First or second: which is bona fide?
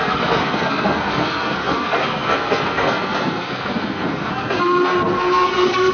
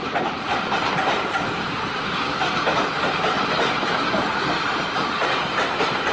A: second